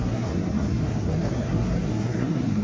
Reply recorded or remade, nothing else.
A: remade